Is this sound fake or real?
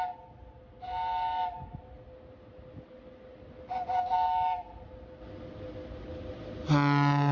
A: real